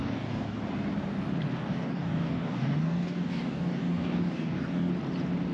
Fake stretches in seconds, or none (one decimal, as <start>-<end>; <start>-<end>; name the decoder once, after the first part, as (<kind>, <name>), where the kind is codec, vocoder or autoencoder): 0.0-0.6 (codec, DAC); 1.6-4.9